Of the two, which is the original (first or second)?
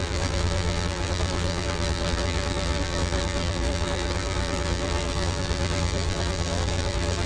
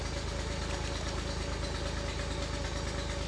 second